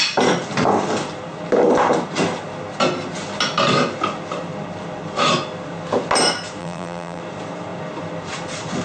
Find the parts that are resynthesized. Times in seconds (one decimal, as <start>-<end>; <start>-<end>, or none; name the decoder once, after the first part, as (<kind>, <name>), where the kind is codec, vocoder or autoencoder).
6.6-7.2 (vocoder, BigVGAN v2)